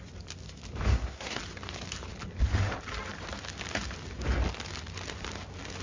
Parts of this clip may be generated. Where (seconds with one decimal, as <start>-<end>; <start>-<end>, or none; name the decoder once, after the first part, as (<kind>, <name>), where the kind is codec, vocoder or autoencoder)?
0.9-1.4 (codec, SNAC)

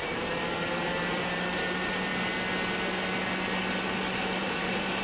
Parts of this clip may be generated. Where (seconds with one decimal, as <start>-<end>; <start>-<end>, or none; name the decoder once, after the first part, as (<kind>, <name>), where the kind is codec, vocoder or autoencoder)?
0.0-2.1 (vocoder, BigVGAN v2); 4.2-5.0